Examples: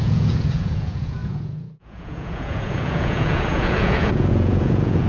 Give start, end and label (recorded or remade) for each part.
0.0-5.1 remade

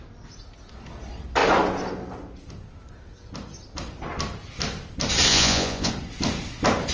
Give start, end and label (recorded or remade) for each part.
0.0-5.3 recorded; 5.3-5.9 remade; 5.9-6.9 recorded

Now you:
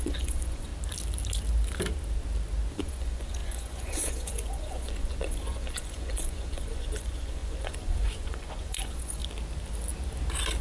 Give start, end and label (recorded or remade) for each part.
0.0-0.7 remade; 0.7-2.7 recorded; 2.7-9.2 remade; 9.2-10.6 recorded